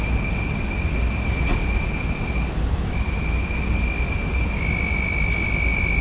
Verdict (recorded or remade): recorded